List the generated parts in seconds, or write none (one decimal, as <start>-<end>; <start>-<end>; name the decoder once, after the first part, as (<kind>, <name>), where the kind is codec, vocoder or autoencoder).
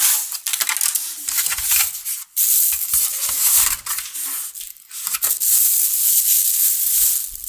1.1-1.9 (vocoder, BigVGAN v2)